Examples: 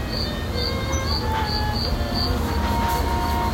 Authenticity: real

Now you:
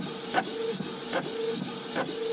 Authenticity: real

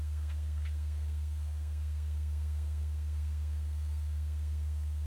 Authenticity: fake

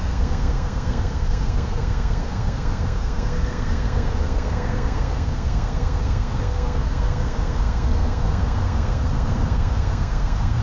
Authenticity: fake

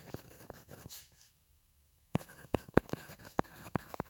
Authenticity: fake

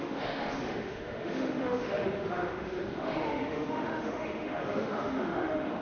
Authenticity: fake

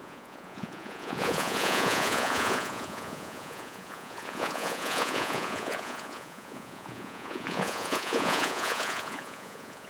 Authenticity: fake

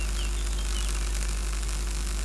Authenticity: real